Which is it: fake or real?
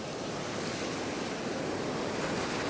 fake